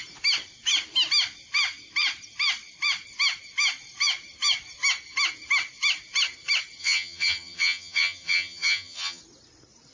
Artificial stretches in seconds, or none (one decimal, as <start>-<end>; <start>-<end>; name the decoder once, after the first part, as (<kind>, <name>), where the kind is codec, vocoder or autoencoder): 6.8-9.2 (vocoder, HiFi-GAN)